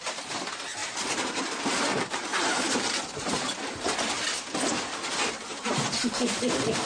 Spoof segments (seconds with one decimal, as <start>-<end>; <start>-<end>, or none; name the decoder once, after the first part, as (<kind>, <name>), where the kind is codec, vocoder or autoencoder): 0.8-1.4 (vocoder, BigVGAN v2); 2.3-3.6; 5.5-6.1